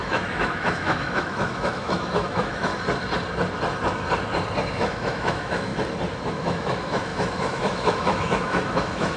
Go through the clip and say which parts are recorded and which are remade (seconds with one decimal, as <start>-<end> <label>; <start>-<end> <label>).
0.0-2.7 remade; 2.7-4.6 recorded; 4.6-5.7 remade; 5.7-6.3 recorded; 6.3-9.2 remade